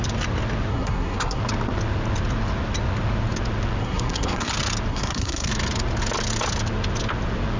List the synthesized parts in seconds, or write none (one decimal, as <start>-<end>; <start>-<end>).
0.7-1.4; 3.8-4.5; 4.9-5.5